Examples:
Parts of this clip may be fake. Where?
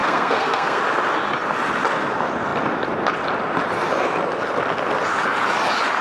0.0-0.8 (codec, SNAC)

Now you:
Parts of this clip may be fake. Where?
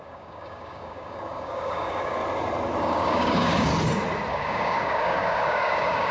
0.0-2.2 (codec, DAC); 2.8-3.7; 4.3-6.1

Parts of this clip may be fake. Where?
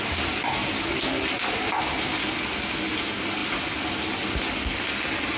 none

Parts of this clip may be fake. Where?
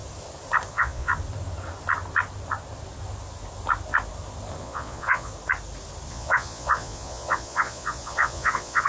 0.7-1.1 (vocoder, Vocos); 4.6-5.3; 6.1-8.9